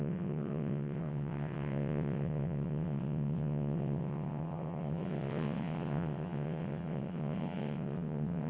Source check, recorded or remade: remade